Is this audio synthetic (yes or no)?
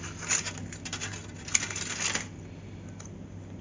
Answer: no